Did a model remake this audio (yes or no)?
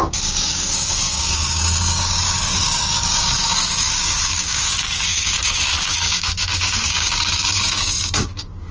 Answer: yes